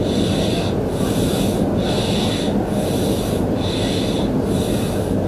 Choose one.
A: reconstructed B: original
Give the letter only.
B